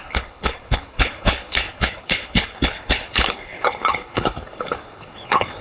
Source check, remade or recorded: remade